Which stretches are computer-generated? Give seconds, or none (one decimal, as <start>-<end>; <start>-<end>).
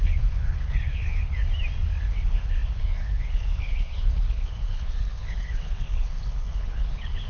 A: 0.0-1.4; 2.0-7.3